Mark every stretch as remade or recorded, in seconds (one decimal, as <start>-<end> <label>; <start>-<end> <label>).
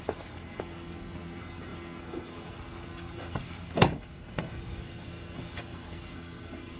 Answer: 0.0-6.8 remade